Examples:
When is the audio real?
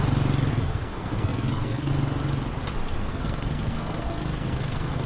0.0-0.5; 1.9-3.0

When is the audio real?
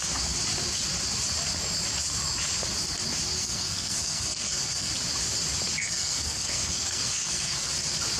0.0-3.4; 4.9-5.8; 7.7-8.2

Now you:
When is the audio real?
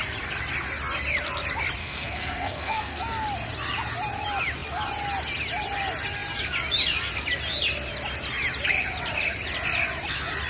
0.0-1.8; 3.0-10.5